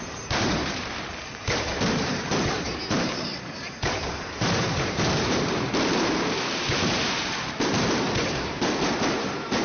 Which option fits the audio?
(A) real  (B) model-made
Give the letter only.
B